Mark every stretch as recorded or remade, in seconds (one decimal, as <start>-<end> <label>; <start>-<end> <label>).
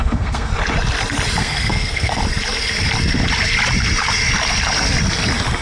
0.0-0.5 remade; 0.5-1.4 recorded; 1.4-2.2 remade; 2.2-5.6 recorded